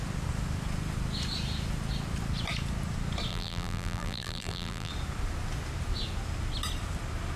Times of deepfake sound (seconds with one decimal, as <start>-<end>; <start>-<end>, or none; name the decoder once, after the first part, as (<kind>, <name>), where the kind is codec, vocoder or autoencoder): 3.3-4.9 (vocoder, BigVGAN v2)